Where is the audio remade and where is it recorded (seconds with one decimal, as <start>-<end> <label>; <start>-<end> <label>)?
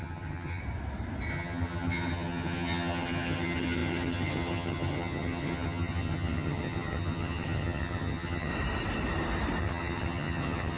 0.0-0.6 remade; 0.6-1.3 recorded; 1.3-8.5 remade; 8.5-9.6 recorded; 9.6-10.8 remade